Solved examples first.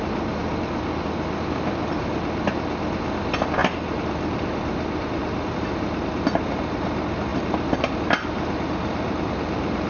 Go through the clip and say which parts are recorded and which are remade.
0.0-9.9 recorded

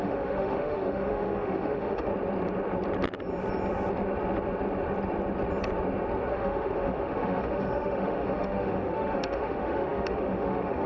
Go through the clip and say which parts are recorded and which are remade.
0.0-2.1 remade; 2.1-6.3 recorded; 6.3-10.9 remade

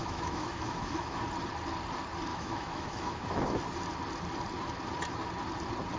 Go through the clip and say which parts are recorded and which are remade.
0.0-1.2 remade; 1.2-2.3 recorded; 2.3-3.6 remade; 3.6-6.0 recorded

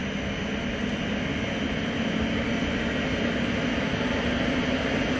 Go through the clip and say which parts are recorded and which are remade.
0.0-5.2 recorded

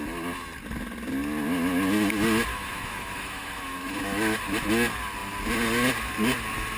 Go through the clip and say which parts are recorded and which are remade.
0.0-2.5 recorded; 2.5-4.4 remade; 4.4-6.8 recorded